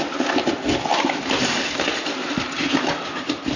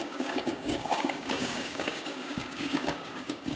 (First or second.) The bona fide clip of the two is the first